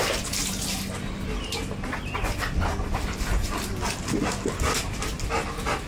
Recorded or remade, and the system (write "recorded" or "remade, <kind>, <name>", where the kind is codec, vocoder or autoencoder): recorded